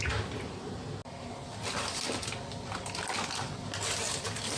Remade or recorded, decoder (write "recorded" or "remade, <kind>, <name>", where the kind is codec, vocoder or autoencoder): recorded